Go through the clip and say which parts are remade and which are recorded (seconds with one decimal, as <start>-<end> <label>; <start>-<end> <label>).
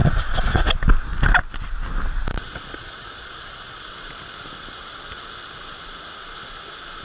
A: 0.0-0.7 remade; 0.7-2.3 recorded; 2.3-3.9 remade; 3.9-7.0 recorded